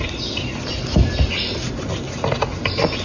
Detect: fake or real real